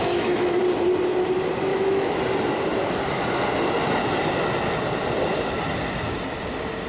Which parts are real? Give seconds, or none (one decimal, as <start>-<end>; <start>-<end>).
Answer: 0.6-1.7; 2.2-6.9